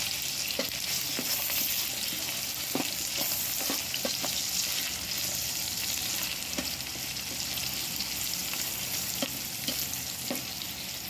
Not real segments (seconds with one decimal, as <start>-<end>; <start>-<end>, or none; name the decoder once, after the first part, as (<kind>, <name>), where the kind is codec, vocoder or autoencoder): none